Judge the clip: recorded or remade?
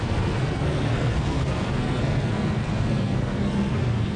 remade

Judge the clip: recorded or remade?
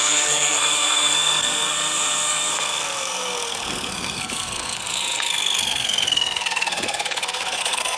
remade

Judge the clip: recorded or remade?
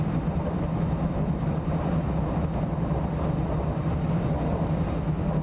recorded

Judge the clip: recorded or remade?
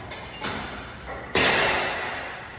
recorded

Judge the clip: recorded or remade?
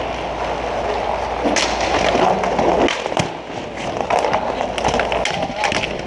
recorded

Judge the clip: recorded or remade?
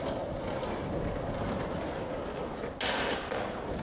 recorded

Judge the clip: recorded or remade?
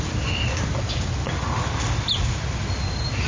recorded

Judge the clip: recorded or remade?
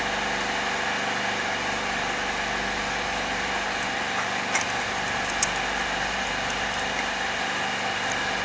recorded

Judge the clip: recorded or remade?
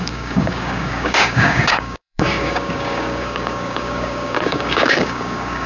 remade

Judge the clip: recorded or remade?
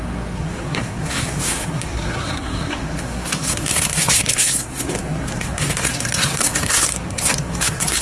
remade